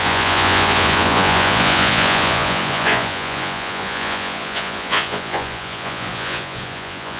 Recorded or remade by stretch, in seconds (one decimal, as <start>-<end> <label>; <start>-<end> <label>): 0.0-7.2 remade